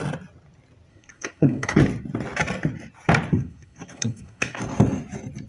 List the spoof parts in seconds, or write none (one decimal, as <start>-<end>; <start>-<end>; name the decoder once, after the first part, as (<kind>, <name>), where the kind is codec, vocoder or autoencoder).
0.9-1.8 (codec, SNAC); 3.3-4.6